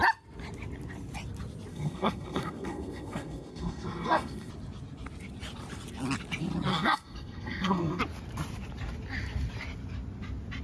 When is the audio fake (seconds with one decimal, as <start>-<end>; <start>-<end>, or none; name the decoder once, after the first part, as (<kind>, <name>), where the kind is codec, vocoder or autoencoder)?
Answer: 1.7-4.5 (codec, SNAC); 6.7-8.0